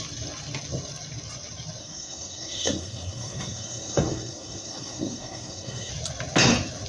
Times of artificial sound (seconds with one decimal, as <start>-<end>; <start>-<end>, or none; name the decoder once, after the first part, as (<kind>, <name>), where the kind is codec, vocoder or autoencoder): 1.8-5.9 (codec, SNAC)